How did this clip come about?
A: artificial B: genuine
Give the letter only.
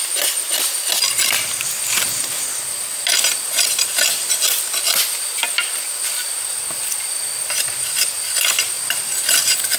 B